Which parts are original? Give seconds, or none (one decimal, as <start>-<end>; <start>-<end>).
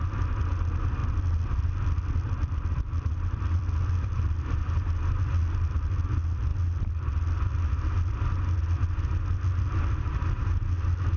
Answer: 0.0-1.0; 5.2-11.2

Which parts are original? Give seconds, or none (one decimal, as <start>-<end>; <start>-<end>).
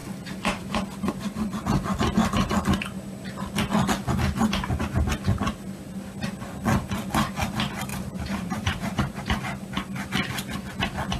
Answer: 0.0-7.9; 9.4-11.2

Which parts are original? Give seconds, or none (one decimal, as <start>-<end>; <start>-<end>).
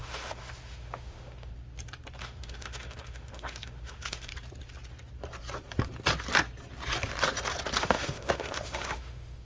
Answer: 1.5-2.2; 4.3-7.8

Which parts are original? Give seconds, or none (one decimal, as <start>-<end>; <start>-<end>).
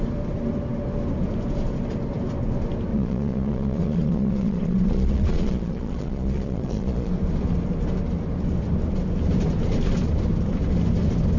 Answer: 0.0-2.9; 7.1-11.4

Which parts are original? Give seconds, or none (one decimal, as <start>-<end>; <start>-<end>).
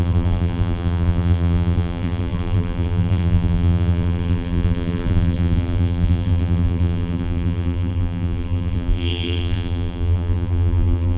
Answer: none